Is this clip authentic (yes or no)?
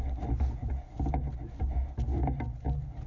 yes